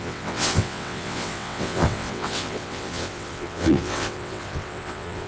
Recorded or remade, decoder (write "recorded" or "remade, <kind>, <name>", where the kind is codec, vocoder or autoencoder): remade, vocoder, WaveNeXt